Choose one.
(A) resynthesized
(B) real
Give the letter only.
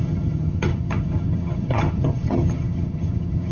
A